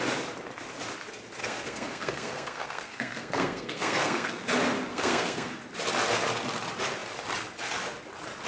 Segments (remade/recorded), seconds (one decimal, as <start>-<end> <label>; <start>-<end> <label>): 0.0-1.4 recorded; 1.4-4.4 remade; 4.4-4.9 recorded; 4.9-5.6 remade; 5.6-8.5 recorded